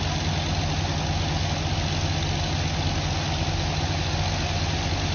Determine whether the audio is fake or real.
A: real